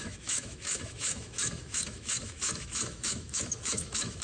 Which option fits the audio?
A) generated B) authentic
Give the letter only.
A